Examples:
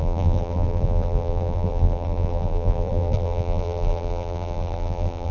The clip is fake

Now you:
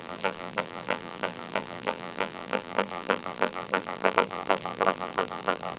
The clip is fake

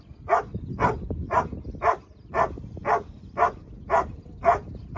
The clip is real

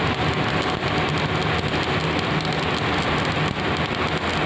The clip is real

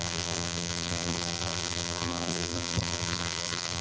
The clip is fake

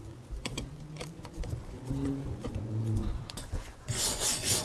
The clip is fake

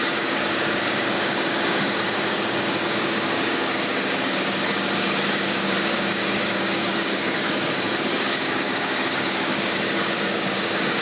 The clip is fake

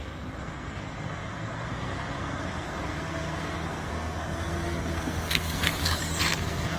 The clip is fake